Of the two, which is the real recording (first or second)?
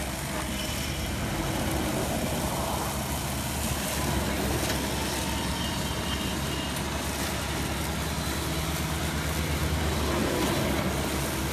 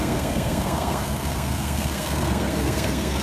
first